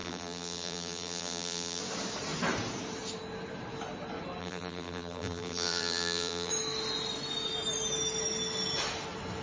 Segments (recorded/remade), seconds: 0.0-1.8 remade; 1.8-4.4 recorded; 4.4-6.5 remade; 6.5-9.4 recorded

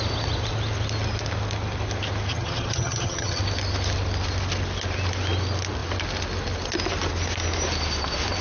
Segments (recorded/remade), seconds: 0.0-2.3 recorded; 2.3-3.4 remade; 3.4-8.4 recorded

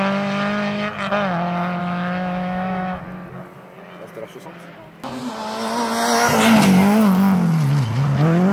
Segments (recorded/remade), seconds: 0.0-1.8 recorded; 1.8-3.0 remade; 3.0-8.5 recorded

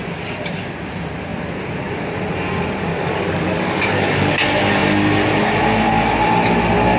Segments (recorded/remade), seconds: 0.0-2.9 recorded; 2.9-4.3 remade; 4.3-7.0 recorded